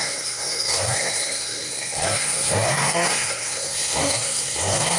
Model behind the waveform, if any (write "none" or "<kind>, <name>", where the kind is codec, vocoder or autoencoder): codec, SNAC